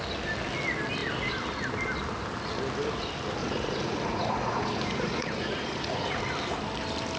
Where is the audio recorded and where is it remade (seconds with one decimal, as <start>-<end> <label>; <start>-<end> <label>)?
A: 0.0-3.4 recorded; 3.4-6.2 remade; 6.2-7.2 recorded